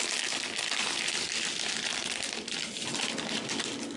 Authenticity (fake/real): real